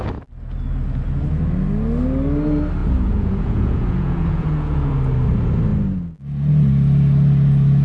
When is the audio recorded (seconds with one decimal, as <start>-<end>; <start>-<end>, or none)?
0.0-2.8; 4.9-7.8